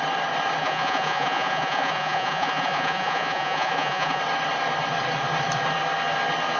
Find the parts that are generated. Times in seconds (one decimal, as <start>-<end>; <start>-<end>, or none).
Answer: 0.6-4.2